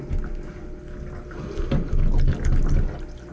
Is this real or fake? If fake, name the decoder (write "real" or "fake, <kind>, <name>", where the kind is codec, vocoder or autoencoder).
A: real